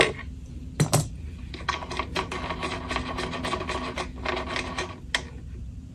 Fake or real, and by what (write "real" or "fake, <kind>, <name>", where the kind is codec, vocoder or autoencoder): real